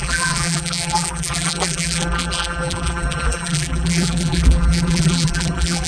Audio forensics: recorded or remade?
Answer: remade